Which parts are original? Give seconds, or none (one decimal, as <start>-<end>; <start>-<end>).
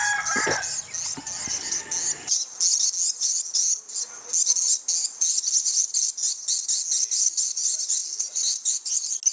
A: 0.0-9.3